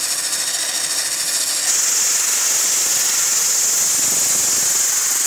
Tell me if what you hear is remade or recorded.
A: recorded